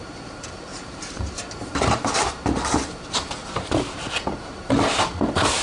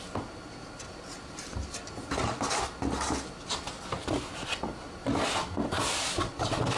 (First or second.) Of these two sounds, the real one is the second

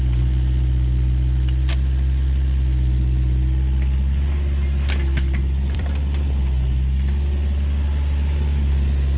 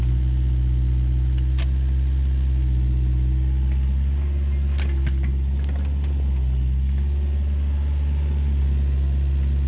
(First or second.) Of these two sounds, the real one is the second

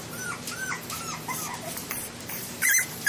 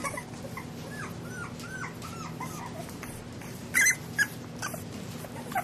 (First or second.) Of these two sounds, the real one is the second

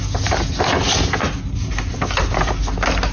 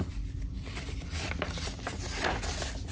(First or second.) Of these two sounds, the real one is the first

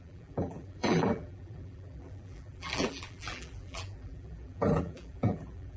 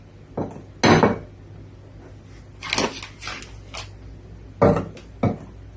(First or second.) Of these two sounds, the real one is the second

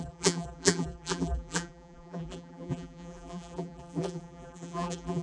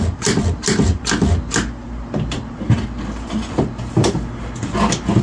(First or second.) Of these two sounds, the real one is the second